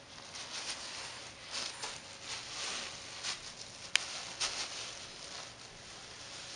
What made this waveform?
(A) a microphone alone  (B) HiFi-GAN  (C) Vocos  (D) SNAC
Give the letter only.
A